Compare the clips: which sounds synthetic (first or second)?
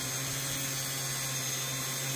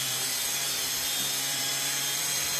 second